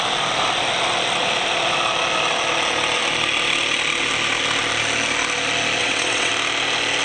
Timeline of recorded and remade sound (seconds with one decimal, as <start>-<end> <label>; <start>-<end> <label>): 0.0-5.8 recorded; 5.8-6.3 remade; 6.3-7.0 recorded